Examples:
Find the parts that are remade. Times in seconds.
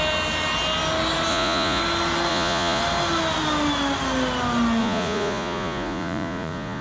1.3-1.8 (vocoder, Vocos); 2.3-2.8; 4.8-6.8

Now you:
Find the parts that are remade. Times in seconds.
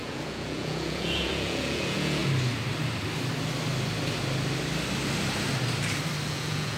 0.0-2.2 (vocoder, Vocos); 6.3-6.8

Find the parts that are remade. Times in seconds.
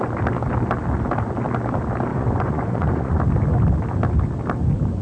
2.1-3.2 (vocoder, Vocos)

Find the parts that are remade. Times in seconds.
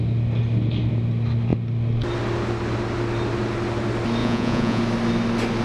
4.2-4.8 (vocoder, Vocos)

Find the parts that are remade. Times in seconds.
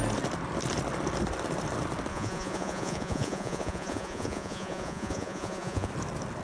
2.1-5.9 (vocoder, Vocos)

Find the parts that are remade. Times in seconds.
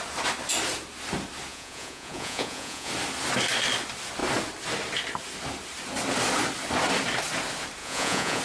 1.5-2.9 (vocoder, Vocos); 7.8-8.4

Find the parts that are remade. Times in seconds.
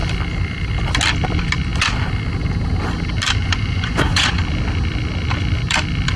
3.4-4.4 (vocoder, Vocos)